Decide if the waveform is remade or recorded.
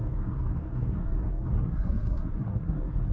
remade